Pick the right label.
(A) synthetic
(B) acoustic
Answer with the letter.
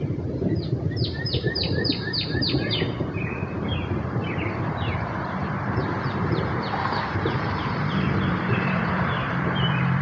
A